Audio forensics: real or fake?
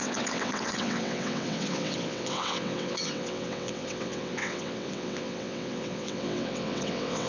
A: fake